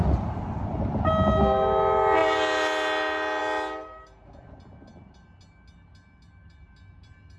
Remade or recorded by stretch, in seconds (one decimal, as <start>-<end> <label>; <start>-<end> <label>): 0.0-7.4 recorded

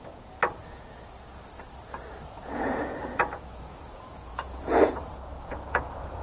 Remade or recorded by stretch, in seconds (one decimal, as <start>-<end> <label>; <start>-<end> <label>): 0.0-0.6 remade; 0.6-2.4 recorded; 2.4-6.2 remade